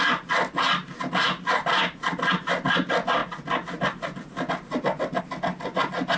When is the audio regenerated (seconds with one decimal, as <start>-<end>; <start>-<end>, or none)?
none